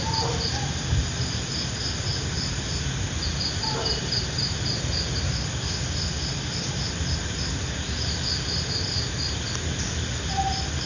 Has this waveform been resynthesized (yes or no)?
no